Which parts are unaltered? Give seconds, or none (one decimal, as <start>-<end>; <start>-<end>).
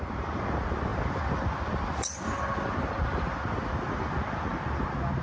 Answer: 0.0-5.2